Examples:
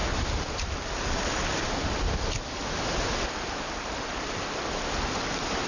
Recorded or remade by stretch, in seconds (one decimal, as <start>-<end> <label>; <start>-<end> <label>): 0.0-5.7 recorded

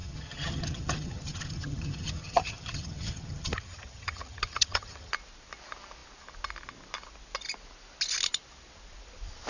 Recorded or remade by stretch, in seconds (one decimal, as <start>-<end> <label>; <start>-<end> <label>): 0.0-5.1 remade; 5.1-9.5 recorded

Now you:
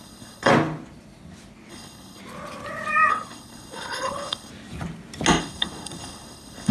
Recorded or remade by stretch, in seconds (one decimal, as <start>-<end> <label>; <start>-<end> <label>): 0.0-0.5 remade; 0.5-1.7 recorded; 1.7-2.2 remade; 2.2-3.1 recorded; 3.1-4.5 remade; 4.5-5.4 recorded; 5.4-6.7 remade

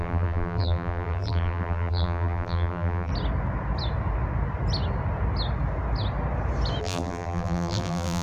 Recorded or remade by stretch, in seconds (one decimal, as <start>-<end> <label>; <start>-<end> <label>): 0.0-3.1 remade; 3.1-6.8 recorded; 6.8-8.2 remade